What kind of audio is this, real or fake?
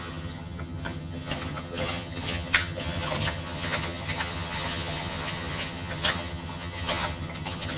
fake